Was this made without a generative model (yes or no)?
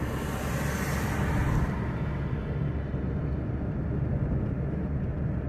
yes